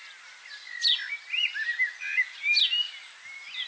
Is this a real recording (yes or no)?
yes